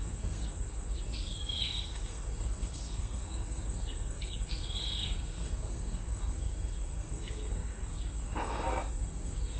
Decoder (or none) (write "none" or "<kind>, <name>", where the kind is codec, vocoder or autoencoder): codec, SNAC